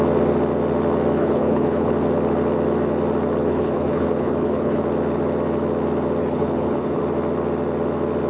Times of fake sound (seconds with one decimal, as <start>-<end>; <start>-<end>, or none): 1.2-1.9; 3.4-4.8; 6.2-7.0